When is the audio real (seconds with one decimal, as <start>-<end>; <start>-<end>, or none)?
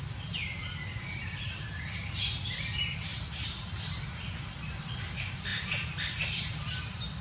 5.5-6.4